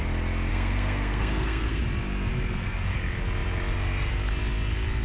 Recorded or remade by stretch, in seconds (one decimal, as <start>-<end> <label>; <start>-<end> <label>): 0.0-0.5 recorded; 0.5-1.8 remade; 1.8-5.0 recorded